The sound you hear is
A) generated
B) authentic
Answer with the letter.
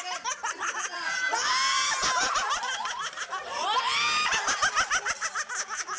B